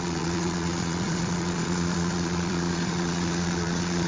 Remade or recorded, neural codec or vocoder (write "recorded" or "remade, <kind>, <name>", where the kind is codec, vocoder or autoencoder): remade, vocoder, Vocos